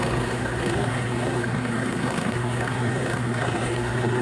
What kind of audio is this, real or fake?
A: fake